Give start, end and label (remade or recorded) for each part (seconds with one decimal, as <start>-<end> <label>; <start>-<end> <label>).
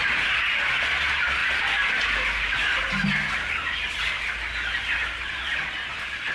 0.0-6.3 recorded